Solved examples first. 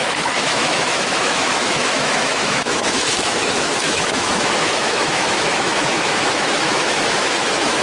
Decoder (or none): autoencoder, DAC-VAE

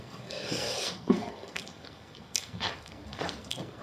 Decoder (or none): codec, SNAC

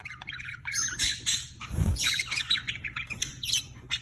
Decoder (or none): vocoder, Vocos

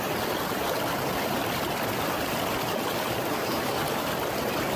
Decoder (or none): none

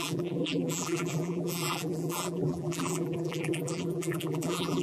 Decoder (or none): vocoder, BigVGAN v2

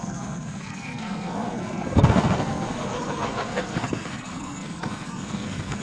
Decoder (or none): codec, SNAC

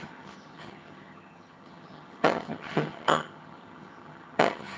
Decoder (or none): vocoder, HiFi-GAN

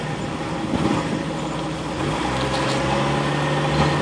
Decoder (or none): none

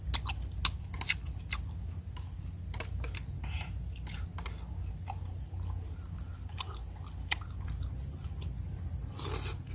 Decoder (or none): none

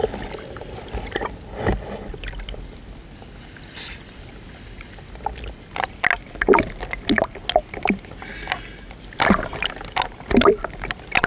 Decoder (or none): none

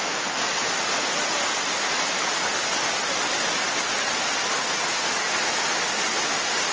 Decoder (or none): vocoder, BigVGAN v2